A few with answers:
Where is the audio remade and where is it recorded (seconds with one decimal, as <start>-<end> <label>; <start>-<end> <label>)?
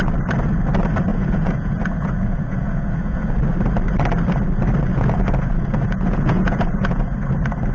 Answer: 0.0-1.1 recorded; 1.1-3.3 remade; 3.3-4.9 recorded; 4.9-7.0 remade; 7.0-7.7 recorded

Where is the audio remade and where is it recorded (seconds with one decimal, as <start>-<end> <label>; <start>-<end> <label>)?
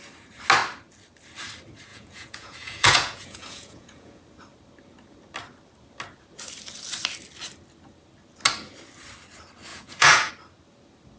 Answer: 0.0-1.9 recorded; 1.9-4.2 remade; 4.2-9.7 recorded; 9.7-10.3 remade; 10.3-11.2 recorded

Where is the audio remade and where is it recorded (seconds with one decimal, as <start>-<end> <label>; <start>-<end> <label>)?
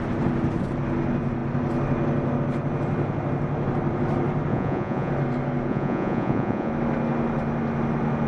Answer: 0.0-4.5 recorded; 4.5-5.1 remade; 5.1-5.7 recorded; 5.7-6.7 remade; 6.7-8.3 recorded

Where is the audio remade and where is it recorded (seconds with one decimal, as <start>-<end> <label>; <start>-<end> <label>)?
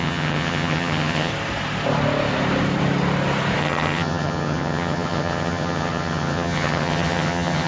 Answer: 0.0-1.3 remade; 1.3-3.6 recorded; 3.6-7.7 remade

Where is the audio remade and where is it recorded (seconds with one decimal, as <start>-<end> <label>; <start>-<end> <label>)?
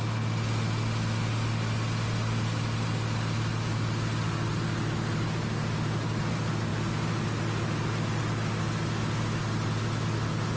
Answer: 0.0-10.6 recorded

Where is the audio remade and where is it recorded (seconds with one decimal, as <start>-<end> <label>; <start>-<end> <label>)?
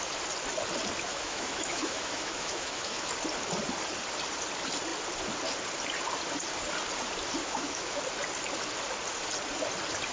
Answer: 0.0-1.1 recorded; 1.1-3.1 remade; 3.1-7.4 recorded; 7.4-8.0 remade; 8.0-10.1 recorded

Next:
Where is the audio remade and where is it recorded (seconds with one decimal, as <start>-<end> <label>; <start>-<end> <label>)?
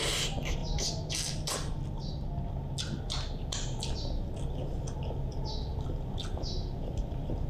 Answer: 0.0-7.5 recorded